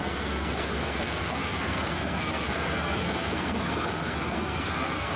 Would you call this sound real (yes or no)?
no